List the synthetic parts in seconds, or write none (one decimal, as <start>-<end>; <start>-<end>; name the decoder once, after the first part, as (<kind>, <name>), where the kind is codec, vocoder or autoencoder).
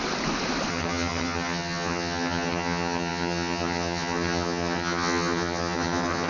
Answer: 0.7-6.3 (vocoder, HiFi-GAN)